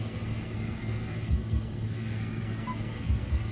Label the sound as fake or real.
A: fake